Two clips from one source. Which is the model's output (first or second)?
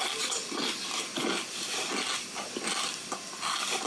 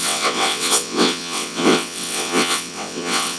second